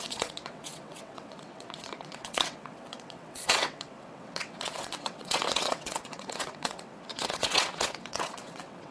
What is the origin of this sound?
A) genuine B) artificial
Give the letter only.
B